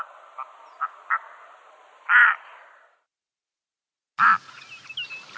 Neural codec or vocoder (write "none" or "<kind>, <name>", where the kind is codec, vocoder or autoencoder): none